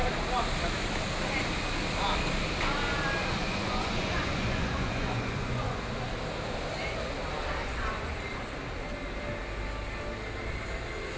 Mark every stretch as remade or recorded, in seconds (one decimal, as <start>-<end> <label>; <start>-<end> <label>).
0.0-3.4 recorded; 3.4-5.8 remade; 5.8-7.6 recorded; 7.6-8.1 remade; 8.1-11.2 recorded